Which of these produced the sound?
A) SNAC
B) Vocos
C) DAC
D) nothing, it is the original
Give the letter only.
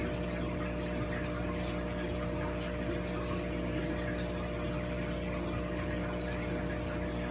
D